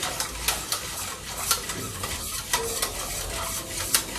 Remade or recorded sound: recorded